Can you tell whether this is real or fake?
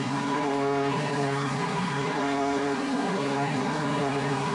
fake